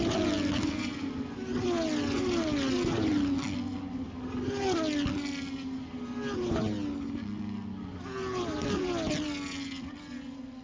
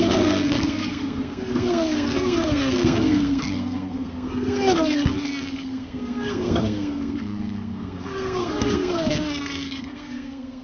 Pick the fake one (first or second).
second